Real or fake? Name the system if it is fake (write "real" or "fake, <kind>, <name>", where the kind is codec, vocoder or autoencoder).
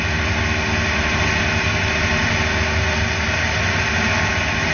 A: real